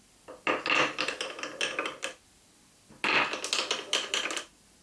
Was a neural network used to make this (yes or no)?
no